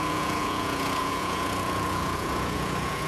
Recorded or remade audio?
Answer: remade